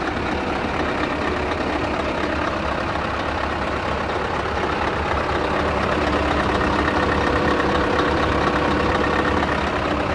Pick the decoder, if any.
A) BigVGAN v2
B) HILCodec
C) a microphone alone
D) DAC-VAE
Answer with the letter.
C